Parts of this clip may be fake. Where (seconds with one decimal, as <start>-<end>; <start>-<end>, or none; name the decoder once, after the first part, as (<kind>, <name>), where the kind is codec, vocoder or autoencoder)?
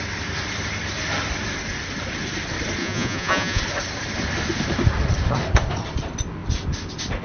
2.8-3.6 (vocoder, Vocos)